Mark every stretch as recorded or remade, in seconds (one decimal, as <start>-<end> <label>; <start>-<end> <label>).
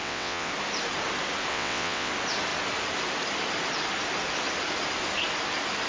0.0-0.5 remade; 0.5-1.5 recorded; 1.5-2.1 remade; 2.1-5.9 recorded